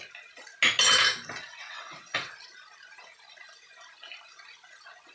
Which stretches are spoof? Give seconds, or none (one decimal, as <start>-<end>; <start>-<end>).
1.5-2.3